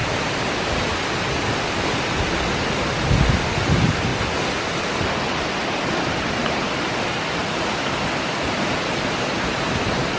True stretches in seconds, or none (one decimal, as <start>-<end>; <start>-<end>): 0.6-7.4; 8.0-10.2